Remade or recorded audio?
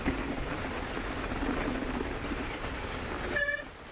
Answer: recorded